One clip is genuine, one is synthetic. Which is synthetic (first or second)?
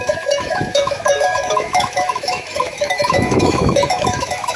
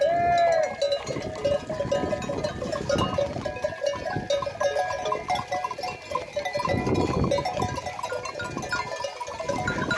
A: first